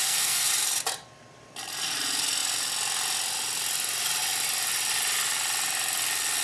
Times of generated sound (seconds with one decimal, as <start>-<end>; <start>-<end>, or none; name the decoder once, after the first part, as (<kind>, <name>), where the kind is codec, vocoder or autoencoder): 0.0-0.5 (codec, SNAC)